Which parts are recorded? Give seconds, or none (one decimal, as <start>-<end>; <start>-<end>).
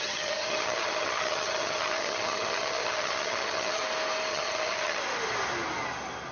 3.8-4.3; 5.0-6.3